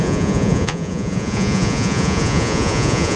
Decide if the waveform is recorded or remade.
remade